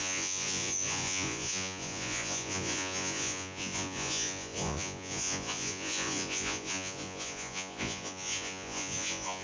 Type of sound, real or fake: fake